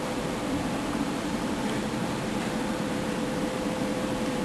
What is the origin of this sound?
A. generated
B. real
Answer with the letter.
A